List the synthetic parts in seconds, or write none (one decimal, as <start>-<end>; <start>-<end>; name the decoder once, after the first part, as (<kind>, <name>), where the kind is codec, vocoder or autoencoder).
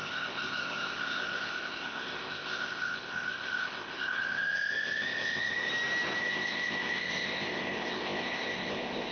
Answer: 0.0-5.7 (codec, ZipCodec); 6.2-9.1